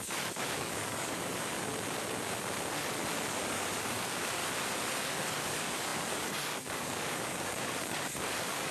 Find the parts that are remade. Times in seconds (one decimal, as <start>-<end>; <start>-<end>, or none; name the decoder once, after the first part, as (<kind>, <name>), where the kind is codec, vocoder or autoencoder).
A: 0.0-1.7 (codec, DAC); 3.4-4.4; 5.0-8.7

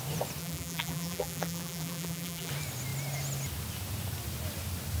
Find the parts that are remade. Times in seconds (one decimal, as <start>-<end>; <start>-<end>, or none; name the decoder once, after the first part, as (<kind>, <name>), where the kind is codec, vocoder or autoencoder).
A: 0.4-2.5 (vocoder, BigVGAN v2)

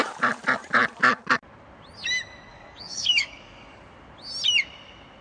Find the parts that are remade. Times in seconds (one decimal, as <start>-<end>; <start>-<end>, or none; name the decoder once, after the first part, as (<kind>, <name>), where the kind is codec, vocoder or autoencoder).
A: 2.5-3.8 (codec, DAC)

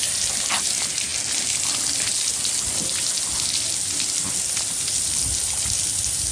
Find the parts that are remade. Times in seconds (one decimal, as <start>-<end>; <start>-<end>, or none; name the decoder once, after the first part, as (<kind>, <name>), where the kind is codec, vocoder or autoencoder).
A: none

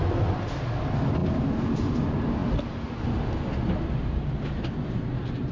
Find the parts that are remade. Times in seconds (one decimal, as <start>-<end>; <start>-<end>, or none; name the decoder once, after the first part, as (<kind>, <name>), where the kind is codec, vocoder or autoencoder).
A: none